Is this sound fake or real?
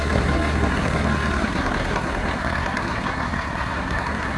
fake